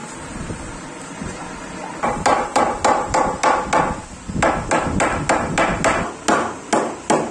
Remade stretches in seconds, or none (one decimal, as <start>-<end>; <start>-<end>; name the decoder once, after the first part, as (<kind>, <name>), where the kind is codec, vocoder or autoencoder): none